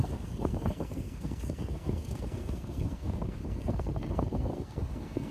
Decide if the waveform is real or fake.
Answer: fake